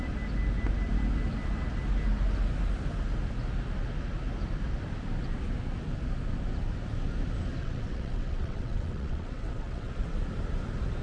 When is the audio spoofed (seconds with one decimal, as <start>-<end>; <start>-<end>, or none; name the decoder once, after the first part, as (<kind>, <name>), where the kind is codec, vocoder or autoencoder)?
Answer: 7.6-9.9 (vocoder, WaveNeXt)